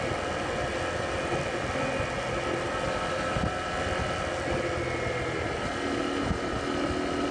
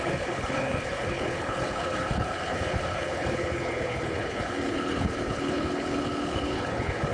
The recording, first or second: first